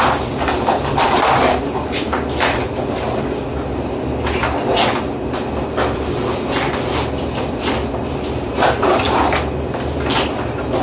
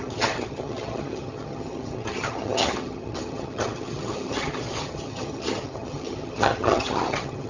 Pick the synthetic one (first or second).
second